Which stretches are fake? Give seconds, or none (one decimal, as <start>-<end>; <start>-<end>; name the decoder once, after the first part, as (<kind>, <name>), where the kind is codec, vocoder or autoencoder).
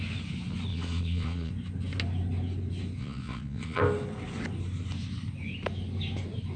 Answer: 0.7-1.5 (vocoder, Vocos); 3.0-3.8